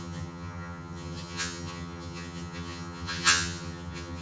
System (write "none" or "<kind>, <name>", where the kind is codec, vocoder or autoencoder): vocoder, HiFi-GAN